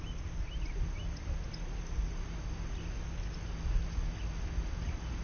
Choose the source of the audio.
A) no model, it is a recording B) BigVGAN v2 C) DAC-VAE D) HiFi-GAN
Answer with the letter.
A